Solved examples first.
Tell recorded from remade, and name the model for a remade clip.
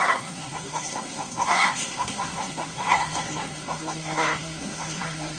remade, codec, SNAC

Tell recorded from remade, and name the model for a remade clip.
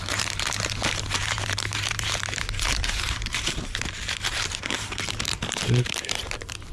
remade, vocoder, BigVGAN v2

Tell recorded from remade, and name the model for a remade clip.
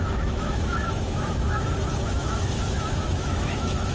remade, autoencoder, DAC-VAE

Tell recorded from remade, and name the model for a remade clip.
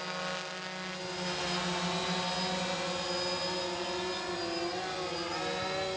recorded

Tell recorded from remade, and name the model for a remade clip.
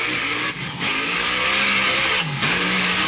remade, codec, DAC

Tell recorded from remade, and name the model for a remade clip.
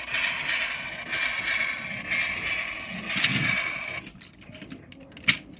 recorded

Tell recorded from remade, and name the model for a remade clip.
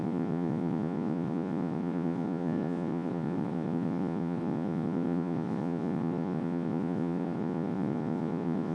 remade, vocoder, Vocos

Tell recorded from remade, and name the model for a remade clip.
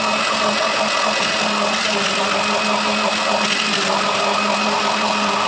recorded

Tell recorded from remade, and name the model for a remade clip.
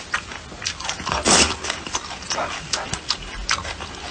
recorded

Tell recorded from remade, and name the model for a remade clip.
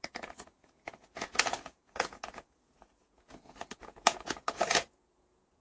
remade, vocoder, Vocos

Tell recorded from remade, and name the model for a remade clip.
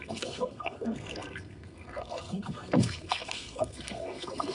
remade, codec, SNAC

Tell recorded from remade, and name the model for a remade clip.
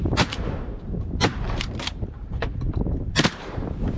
remade, vocoder, BigVGAN v2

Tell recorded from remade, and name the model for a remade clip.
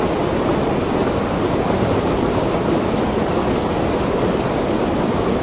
recorded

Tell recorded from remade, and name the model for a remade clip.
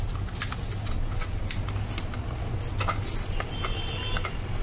recorded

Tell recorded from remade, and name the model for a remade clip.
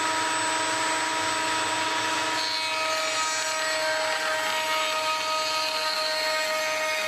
recorded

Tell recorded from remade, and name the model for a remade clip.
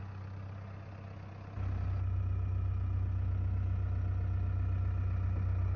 recorded